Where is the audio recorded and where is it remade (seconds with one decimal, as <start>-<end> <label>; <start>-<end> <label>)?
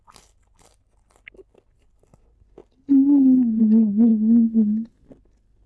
0.0-5.7 recorded